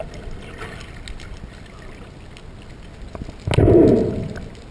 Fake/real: real